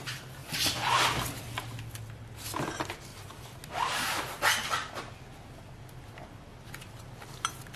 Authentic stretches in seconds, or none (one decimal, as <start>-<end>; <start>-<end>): 0.0-7.8